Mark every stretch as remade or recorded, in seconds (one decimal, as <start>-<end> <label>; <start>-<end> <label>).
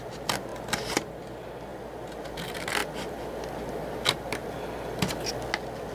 0.0-5.9 recorded